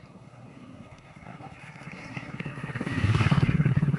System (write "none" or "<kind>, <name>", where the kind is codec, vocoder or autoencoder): codec, SNAC